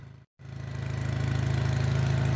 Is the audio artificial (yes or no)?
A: no